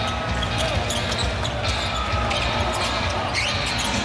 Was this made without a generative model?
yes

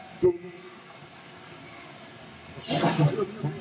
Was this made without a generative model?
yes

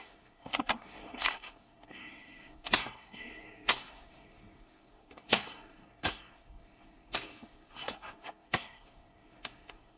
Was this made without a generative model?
no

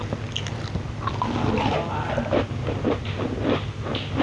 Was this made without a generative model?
yes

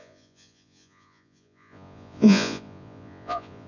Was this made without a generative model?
no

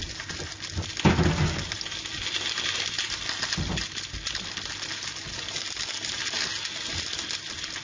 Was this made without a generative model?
yes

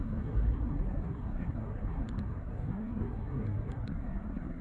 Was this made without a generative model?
no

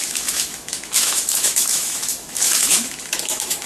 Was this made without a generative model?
no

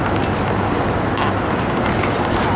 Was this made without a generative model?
yes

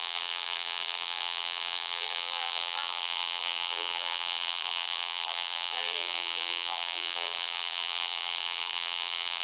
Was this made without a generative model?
no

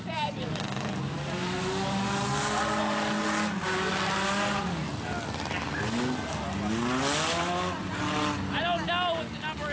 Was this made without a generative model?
yes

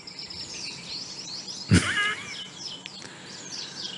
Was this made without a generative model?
yes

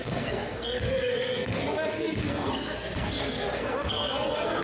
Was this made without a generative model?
no